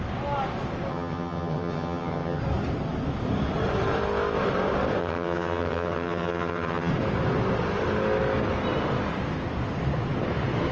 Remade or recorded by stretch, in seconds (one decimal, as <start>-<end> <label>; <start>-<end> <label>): 0.0-0.9 recorded; 0.9-2.4 remade; 2.4-5.0 recorded; 5.0-6.9 remade; 6.9-10.7 recorded